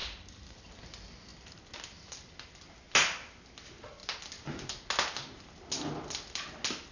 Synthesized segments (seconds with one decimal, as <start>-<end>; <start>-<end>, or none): none